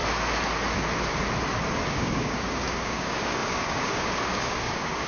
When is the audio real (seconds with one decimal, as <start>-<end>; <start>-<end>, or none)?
0.0-1.9

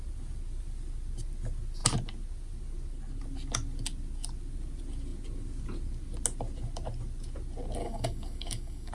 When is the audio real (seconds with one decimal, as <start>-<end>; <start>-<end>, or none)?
0.0-7.8

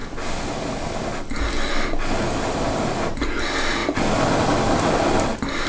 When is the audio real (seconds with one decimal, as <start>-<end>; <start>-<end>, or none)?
0.0-5.7

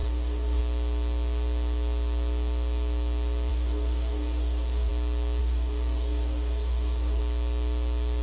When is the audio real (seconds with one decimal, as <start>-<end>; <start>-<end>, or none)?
0.6-3.5; 4.9-5.4; 7.2-8.2

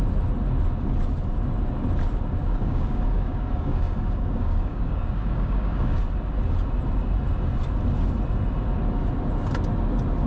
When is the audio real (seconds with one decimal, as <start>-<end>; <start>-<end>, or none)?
0.0-2.4; 6.0-10.3

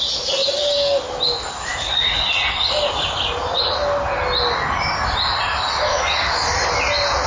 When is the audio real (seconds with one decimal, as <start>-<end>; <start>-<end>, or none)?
0.0-0.4; 1.0-5.9; 6.7-7.3

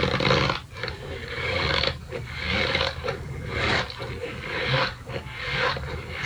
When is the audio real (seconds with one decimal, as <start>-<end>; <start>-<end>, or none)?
0.0-0.8; 3.8-4.2

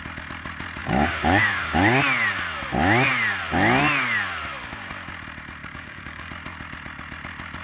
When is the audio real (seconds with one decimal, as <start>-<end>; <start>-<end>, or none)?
0.0-0.8; 2.0-5.6; 6.3-7.6